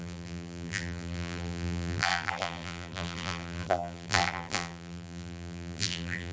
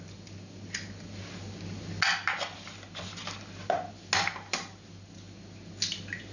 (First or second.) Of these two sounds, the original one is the second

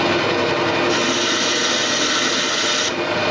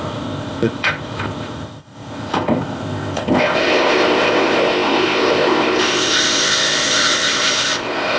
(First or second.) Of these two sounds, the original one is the first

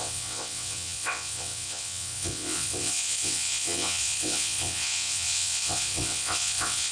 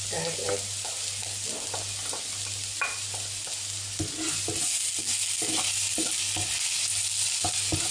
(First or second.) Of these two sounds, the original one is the second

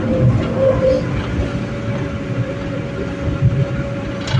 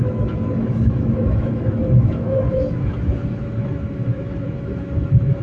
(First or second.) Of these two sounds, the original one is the first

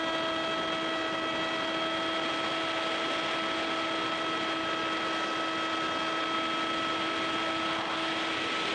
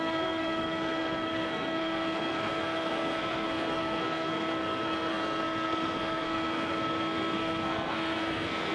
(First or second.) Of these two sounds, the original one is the first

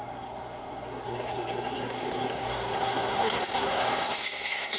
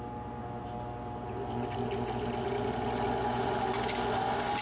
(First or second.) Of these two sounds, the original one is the second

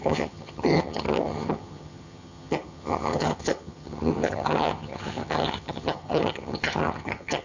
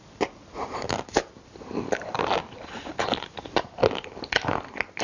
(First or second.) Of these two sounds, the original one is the second